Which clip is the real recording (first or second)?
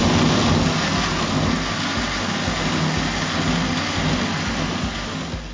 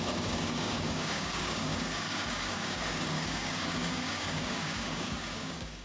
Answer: first